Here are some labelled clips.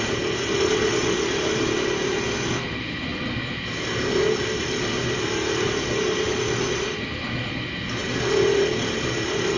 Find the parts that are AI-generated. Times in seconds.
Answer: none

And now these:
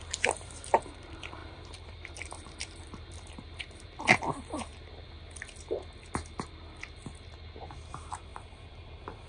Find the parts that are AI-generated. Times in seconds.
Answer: 0.0-4.7; 7.9-9.3

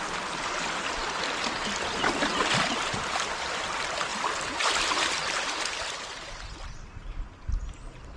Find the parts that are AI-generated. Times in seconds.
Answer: 2.3-2.8; 4.1-6.2

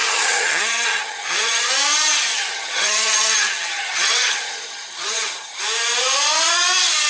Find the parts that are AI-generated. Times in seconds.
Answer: 0.0-1.7; 2.3-5.6

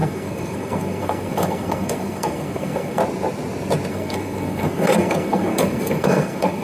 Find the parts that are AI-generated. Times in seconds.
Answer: 0.0-3.0; 3.9-6.6